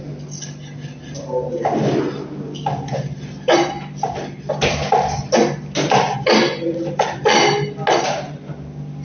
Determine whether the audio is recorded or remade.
recorded